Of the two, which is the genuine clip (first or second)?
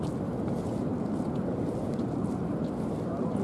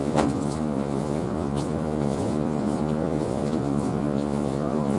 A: first